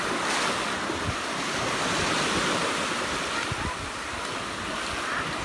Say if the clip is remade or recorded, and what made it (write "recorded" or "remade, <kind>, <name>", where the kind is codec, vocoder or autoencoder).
recorded